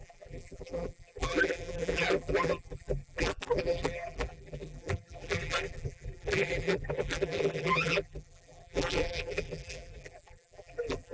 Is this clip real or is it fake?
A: fake